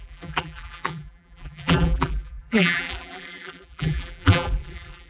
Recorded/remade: remade